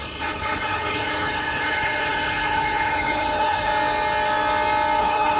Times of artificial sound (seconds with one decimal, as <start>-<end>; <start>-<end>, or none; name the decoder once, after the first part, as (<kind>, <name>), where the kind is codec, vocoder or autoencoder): 0.0-3.7 (codec, HILCodec); 5.0-5.4

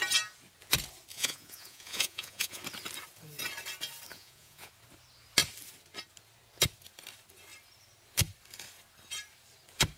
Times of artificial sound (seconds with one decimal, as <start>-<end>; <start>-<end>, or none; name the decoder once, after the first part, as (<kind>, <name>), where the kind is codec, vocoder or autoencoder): 1.1-2.6 (vocoder, Vocos); 4.1-4.7

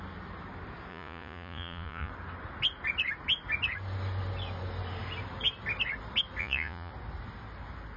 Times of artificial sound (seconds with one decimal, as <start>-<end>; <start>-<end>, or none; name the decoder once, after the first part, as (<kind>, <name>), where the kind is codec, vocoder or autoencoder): 0.9-2.1 (vocoder, Vocos); 6.4-6.9

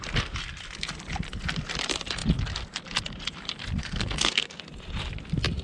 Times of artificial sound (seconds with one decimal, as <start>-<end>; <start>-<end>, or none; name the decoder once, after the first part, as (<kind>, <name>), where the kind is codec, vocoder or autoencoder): 3.8-4.6 (codec, SNAC)

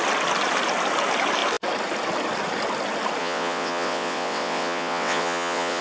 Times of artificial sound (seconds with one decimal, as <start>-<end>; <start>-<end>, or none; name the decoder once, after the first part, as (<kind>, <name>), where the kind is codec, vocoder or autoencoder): 3.2-5.8 (vocoder, WaveNeXt)

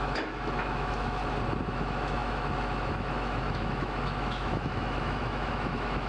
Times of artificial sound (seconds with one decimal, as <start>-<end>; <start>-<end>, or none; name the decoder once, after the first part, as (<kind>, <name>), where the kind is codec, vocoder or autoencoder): 0.0-1.2 (autoencoder, DAC-VAE); 1.7-6.1

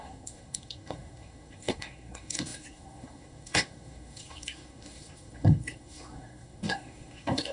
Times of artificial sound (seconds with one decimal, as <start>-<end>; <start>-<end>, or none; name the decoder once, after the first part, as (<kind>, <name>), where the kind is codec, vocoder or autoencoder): 0.0-7.5 (codec, SNAC)